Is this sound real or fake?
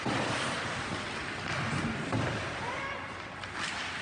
real